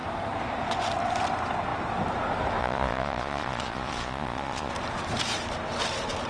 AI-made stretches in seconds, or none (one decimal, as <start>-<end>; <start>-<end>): 2.6-4.7